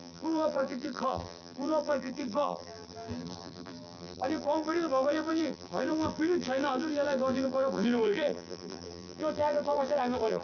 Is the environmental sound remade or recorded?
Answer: remade